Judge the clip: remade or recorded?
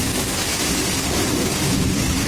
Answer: remade